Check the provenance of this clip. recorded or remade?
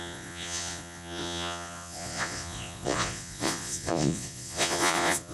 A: remade